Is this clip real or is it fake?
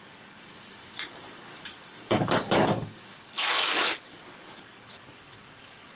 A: fake